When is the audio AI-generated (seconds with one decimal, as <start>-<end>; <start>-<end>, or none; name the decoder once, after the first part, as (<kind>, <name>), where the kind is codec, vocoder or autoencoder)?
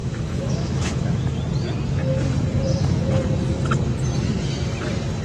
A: 0.0-1.4 (autoencoder, DAC-VAE)